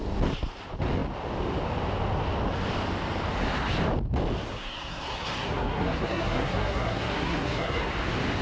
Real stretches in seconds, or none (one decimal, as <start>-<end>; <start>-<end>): 0.0-4.5; 7.9-8.4